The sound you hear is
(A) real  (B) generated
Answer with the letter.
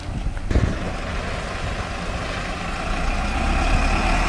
A